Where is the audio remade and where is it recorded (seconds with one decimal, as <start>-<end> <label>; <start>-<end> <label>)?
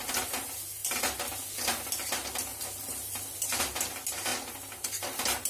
0.0-0.8 recorded; 0.8-1.4 remade; 1.4-2.5 recorded; 2.5-3.6 remade; 3.6-5.5 recorded